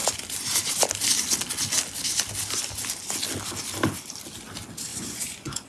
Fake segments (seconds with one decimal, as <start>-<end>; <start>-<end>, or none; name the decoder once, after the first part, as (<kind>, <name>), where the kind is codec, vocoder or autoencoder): 4.9-5.7 (vocoder, Vocos)